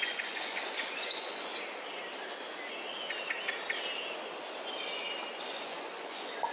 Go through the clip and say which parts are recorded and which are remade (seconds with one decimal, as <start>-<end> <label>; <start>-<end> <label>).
0.0-1.5 remade; 1.5-5.4 recorded; 5.4-6.5 remade